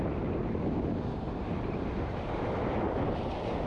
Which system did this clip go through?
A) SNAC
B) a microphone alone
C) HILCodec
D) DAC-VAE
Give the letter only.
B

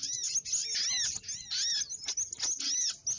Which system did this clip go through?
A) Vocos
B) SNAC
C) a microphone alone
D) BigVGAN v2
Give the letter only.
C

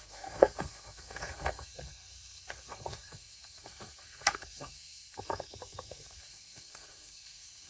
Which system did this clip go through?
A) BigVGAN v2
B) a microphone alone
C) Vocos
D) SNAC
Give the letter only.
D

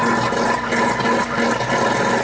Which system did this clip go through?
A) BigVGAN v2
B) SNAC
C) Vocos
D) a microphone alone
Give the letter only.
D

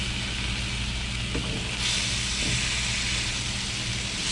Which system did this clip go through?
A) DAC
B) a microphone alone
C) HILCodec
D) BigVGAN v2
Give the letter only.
B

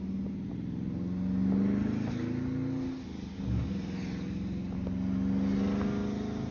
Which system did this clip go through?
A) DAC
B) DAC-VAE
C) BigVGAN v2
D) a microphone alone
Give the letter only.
D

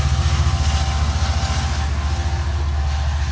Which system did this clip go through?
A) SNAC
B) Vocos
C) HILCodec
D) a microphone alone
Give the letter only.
D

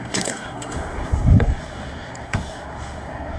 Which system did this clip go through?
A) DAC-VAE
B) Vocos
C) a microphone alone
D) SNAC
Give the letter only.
D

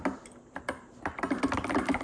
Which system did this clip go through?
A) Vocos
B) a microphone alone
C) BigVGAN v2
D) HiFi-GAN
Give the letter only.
C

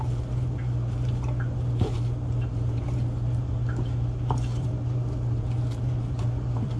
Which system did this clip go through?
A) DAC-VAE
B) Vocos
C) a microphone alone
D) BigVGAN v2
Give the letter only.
D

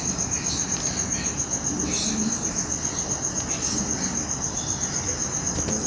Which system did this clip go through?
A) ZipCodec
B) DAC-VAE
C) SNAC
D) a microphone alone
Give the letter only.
D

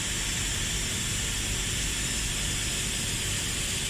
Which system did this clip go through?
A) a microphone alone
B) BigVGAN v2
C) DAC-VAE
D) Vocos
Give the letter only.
A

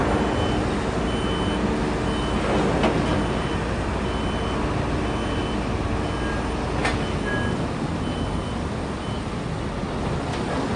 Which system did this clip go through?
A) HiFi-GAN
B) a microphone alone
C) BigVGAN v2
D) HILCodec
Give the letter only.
B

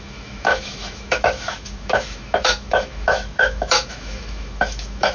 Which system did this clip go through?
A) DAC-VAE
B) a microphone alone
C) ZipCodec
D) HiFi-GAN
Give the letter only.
A